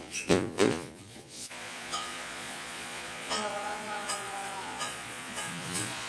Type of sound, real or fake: fake